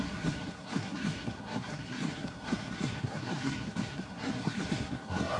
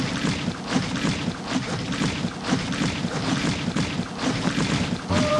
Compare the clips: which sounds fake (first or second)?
first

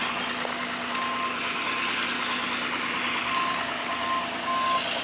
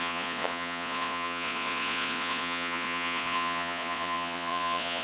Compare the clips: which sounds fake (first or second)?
second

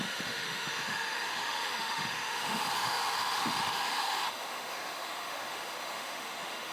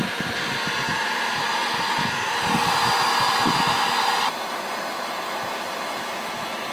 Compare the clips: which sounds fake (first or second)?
first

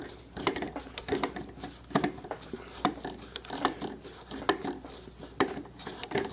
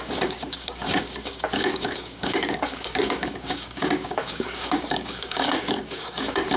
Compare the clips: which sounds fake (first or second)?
second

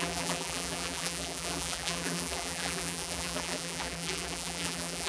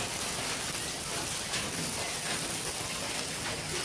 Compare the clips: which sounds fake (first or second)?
first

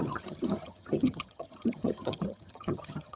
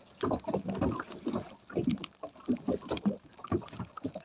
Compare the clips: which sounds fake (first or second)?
first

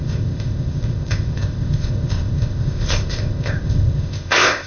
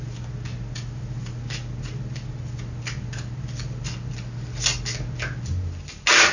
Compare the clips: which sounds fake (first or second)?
first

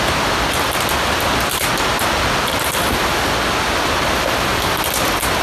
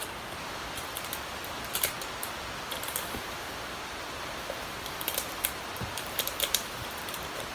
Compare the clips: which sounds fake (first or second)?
second